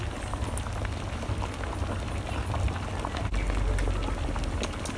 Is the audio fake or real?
real